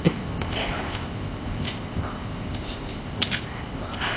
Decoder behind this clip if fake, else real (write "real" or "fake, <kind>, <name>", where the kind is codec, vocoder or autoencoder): fake, codec, ZipCodec